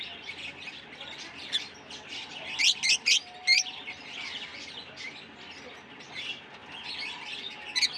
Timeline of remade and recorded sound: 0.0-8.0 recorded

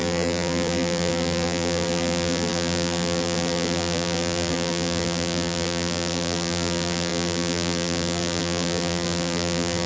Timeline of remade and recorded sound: 0.0-9.9 remade